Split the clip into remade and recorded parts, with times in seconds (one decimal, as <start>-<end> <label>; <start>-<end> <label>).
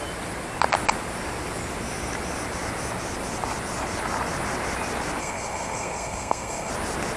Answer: 0.0-5.2 recorded; 5.2-6.7 remade; 6.7-7.2 recorded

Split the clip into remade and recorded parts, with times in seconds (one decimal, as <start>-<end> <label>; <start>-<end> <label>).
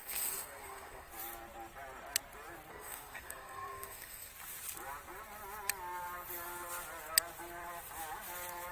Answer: 0.0-1.1 remade; 1.1-2.7 recorded; 2.7-4.3 remade; 4.3-8.7 recorded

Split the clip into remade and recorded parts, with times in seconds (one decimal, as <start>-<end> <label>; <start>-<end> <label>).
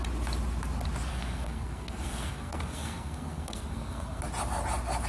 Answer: 0.0-1.1 recorded; 1.1-4.2 remade; 4.2-5.1 recorded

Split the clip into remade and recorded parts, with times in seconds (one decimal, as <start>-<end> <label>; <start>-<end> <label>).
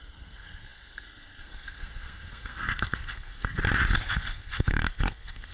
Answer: 0.0-3.6 remade; 3.6-4.1 recorded; 4.1-5.5 remade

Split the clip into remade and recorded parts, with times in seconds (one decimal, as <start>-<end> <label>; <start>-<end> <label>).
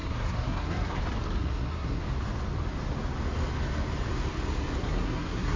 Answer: 0.0-1.0 remade; 1.0-1.4 recorded; 1.4-2.0 remade; 2.0-4.8 recorded; 4.8-5.6 remade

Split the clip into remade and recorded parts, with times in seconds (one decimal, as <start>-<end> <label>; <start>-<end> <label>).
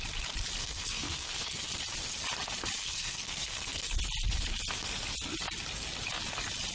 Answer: 0.0-0.6 recorded; 0.6-1.7 remade; 1.7-2.8 recorded; 2.8-3.9 remade; 3.9-6.7 recorded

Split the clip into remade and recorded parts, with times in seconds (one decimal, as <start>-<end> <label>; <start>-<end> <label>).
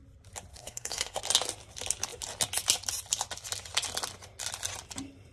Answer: 0.0-0.5 recorded; 0.5-1.2 remade; 1.2-5.3 recorded